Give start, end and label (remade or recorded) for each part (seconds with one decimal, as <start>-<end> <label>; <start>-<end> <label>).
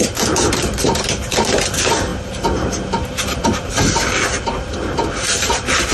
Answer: 0.0-2.1 remade; 2.1-2.7 recorded; 2.7-5.9 remade